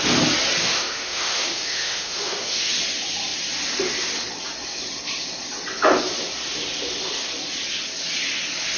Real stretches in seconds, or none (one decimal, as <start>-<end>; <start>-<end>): 0.0-0.6; 2.7-8.8